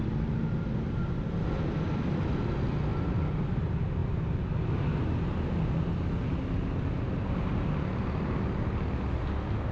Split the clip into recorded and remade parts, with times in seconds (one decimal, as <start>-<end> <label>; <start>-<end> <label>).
0.0-9.7 recorded

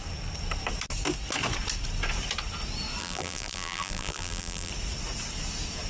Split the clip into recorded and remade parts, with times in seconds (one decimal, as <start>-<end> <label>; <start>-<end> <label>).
0.0-3.0 recorded; 3.0-4.7 remade; 4.7-5.9 recorded

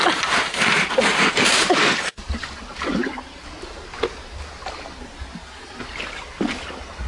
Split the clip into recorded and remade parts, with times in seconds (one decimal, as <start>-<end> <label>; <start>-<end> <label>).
0.0-7.1 remade